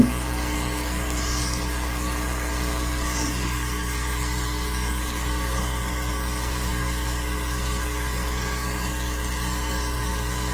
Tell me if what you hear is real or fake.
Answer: fake